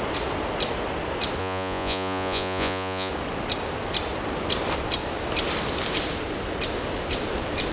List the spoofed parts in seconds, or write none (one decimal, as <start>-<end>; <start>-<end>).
1.4-3.1